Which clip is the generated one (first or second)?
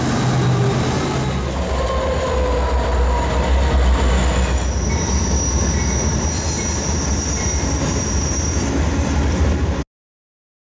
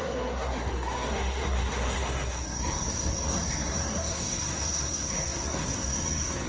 second